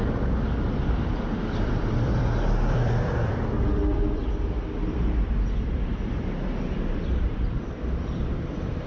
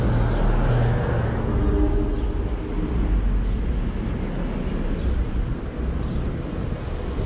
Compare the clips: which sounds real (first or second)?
second